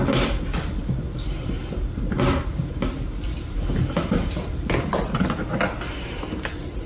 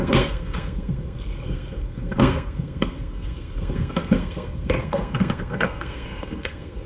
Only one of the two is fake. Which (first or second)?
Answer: second